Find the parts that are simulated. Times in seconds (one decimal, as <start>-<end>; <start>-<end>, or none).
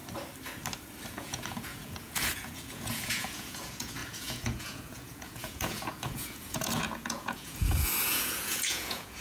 1.1-9.2